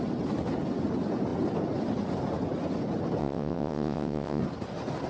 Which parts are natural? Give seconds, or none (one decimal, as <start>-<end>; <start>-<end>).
0.0-3.2; 4.4-5.1